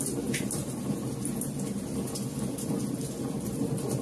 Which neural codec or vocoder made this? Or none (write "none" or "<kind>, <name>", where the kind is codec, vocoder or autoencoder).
none